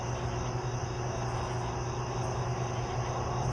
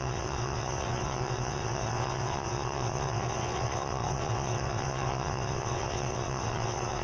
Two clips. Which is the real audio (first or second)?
first